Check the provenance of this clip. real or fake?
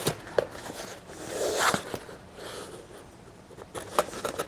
real